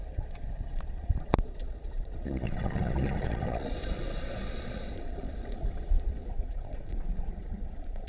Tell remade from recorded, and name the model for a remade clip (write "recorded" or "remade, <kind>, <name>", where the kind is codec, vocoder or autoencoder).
remade, vocoder, Vocos